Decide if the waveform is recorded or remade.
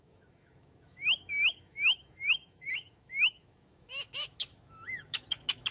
remade